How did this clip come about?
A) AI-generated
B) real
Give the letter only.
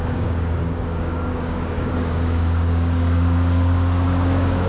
A